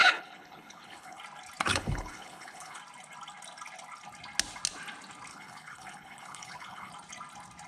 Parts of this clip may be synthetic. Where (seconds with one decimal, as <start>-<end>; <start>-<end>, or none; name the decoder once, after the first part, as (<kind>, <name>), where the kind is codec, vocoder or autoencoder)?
0.0-1.2 (codec, HILCodec); 1.7-2.8; 5.3-6.9